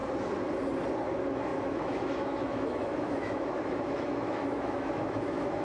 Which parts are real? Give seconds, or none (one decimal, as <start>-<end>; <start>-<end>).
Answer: 0.0-1.1